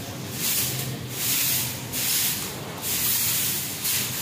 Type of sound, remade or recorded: recorded